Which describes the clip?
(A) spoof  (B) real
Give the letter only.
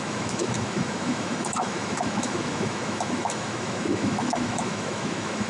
A